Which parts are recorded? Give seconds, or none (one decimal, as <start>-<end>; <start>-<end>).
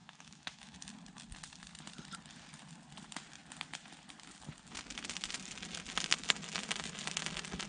0.8-7.7